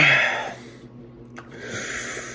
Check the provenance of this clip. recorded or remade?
recorded